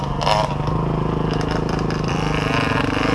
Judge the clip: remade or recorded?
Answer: recorded